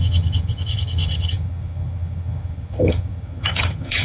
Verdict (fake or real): fake